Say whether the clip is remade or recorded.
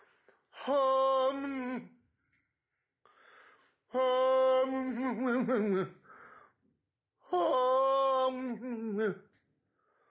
recorded